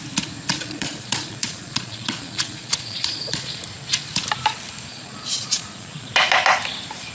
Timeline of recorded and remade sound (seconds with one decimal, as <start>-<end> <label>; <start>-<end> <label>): 0.0-0.5 recorded; 0.5-3.6 remade; 3.6-4.9 recorded; 4.9-6.1 remade; 6.1-7.1 recorded

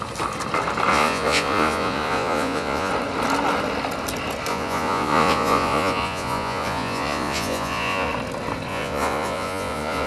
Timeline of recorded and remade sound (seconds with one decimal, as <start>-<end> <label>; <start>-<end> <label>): 0.0-0.9 recorded; 0.9-2.9 remade; 2.9-4.5 recorded; 4.5-8.1 remade; 8.1-8.7 recorded; 8.7-10.1 remade

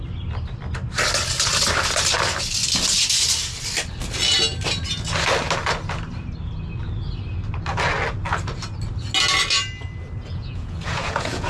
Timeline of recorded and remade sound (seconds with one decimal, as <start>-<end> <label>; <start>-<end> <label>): 0.0-10.2 recorded; 10.2-11.5 remade

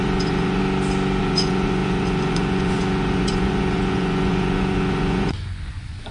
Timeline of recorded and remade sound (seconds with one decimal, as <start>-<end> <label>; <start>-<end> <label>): 0.0-0.6 remade; 0.6-1.2 recorded; 1.2-6.1 remade